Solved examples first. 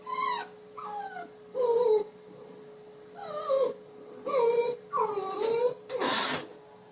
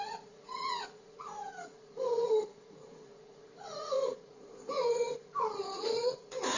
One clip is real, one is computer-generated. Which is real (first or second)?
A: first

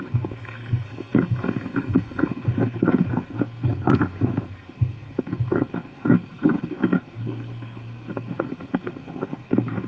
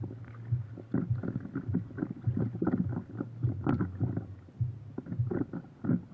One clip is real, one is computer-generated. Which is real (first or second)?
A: second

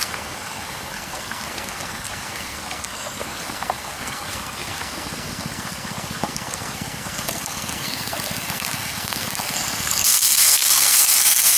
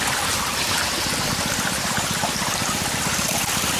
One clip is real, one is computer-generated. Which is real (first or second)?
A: second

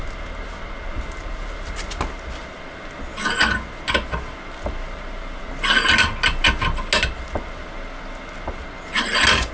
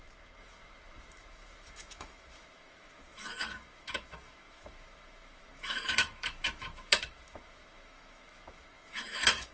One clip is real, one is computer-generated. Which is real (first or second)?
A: first